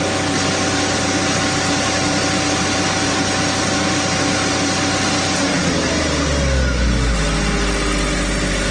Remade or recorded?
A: recorded